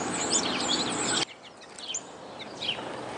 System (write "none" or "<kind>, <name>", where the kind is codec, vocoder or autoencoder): vocoder, BigVGAN v2